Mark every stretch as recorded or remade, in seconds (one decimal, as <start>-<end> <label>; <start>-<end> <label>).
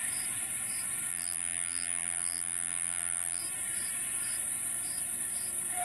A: 0.0-1.1 recorded; 1.1-3.4 remade; 3.4-5.8 recorded